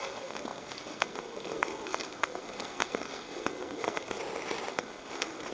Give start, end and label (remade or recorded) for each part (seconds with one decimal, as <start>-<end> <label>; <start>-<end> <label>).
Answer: 0.0-4.2 remade; 4.2-4.7 recorded; 4.7-5.5 remade